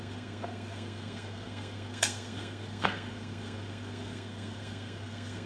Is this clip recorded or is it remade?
remade